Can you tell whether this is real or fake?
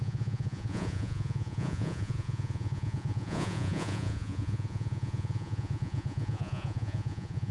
fake